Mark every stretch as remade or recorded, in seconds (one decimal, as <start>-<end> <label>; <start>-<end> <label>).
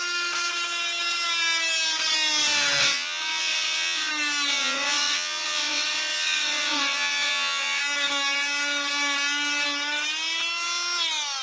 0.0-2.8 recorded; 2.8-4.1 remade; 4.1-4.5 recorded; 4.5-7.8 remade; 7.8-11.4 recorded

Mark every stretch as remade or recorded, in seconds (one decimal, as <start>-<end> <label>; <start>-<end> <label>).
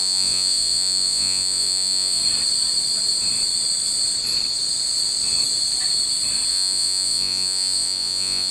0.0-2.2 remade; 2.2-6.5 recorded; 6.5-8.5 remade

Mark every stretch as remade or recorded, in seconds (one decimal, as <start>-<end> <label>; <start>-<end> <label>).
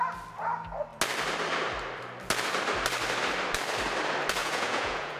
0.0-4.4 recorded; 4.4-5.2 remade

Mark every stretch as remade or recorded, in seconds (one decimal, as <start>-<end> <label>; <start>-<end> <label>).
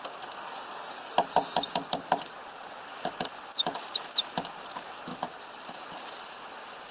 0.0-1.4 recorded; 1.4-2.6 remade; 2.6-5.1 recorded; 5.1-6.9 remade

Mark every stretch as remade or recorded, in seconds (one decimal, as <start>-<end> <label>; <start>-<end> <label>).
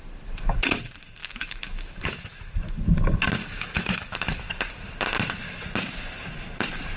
0.0-1.2 recorded; 1.2-2.6 remade; 2.6-3.4 recorded; 3.4-4.5 remade; 4.5-7.0 recorded